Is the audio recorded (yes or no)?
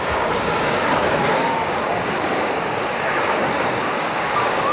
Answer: no